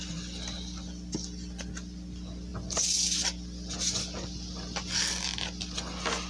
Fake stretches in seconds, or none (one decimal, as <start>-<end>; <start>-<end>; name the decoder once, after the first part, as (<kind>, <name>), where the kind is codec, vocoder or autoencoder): none